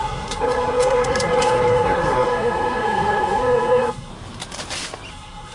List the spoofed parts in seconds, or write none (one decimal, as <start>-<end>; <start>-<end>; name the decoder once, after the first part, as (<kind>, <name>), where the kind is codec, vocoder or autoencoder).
0.0-4.1 (codec, SNAC); 5.1-5.5